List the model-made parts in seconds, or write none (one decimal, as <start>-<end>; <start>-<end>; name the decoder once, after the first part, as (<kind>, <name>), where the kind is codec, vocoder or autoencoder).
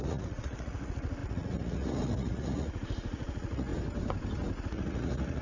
0.0-3.7 (vocoder, Vocos); 4.6-5.4